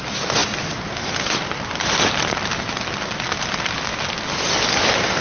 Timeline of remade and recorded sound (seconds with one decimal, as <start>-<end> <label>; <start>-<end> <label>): 0.0-0.4 recorded; 0.4-3.5 remade; 3.5-5.2 recorded